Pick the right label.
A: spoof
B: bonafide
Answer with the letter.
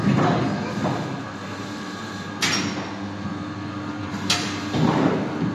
B